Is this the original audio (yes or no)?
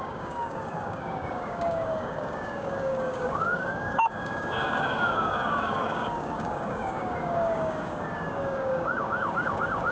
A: no